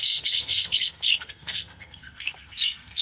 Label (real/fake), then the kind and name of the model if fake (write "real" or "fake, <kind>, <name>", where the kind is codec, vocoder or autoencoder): fake, codec, SNAC